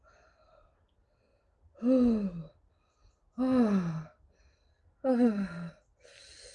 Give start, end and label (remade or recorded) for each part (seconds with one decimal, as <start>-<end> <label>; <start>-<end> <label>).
0.0-4.7 recorded; 4.7-5.7 remade; 5.7-6.5 recorded

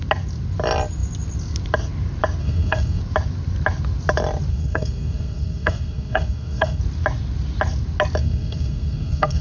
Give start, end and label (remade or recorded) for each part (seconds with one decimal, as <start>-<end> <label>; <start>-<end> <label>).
0.0-2.4 recorded; 2.4-3.0 remade; 3.0-4.5 recorded; 4.5-6.8 remade; 6.8-8.2 recorded; 8.2-9.4 remade

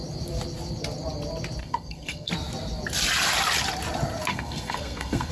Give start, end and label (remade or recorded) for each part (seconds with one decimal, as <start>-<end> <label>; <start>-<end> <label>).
0.0-1.6 recorded; 1.6-2.3 remade; 2.3-4.3 recorded; 4.3-5.3 remade

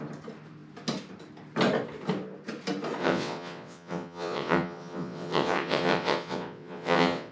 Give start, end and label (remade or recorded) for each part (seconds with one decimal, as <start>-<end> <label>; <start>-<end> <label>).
0.0-3.0 recorded; 3.0-7.3 remade

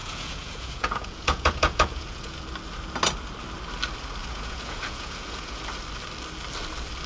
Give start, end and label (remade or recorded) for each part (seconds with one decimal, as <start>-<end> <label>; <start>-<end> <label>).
0.0-2.4 remade; 2.4-4.2 recorded; 4.2-5.6 remade; 5.6-7.1 recorded

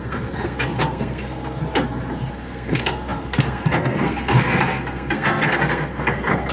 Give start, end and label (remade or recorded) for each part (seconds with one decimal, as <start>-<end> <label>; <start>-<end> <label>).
0.0-1.6 remade; 1.6-2.3 recorded; 2.3-6.5 remade

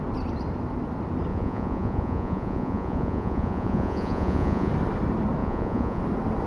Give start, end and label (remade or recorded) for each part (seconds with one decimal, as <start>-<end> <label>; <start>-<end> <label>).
0.0-1.3 recorded; 1.3-4.7 remade; 4.7-5.4 recorded; 5.4-6.0 remade; 6.0-6.5 recorded